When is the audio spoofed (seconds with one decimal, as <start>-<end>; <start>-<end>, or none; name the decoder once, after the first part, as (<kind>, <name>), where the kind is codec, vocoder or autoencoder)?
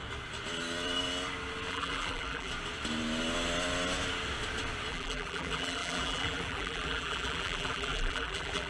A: 1.7-2.5 (vocoder, BigVGAN v2); 4.9-8.7